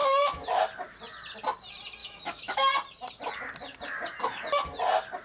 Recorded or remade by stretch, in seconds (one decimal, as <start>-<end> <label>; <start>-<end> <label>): 0.0-0.6 remade; 0.6-2.0 recorded; 2.0-2.7 remade; 2.7-5.2 recorded